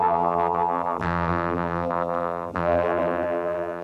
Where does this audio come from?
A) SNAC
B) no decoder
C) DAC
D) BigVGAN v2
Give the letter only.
D